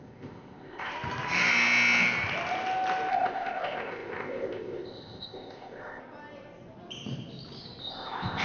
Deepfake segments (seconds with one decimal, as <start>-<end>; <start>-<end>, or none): 0.0-0.9; 3.1-6.0; 7.8-8.4